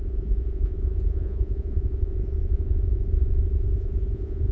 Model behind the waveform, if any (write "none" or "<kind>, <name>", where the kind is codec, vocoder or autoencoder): vocoder, Vocos